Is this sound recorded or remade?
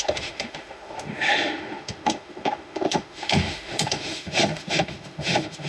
remade